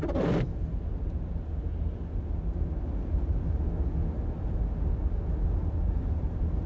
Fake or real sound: real